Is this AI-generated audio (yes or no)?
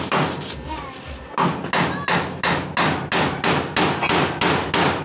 no